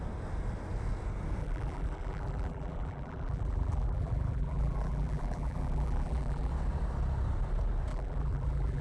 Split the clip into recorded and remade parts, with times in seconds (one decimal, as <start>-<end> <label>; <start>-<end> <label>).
0.0-1.4 recorded; 1.4-6.5 remade; 6.5-7.9 recorded; 7.9-8.8 remade